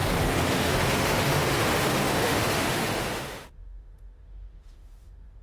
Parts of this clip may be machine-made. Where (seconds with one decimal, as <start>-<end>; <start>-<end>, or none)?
0.0-5.4